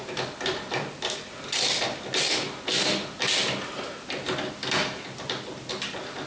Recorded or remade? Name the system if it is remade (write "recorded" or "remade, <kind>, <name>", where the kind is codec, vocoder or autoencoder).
recorded